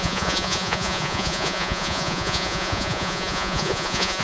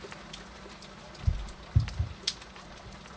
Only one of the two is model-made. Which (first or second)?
first